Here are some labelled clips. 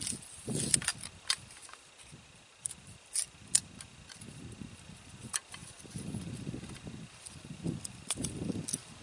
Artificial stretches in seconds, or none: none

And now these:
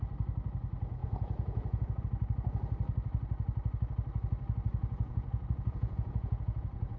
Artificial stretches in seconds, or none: 1.0-2.0 (vocoder, Vocos); 4.8-7.0